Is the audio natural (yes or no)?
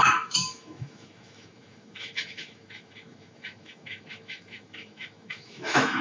no